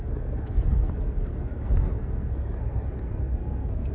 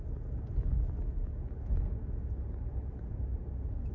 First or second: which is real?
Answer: second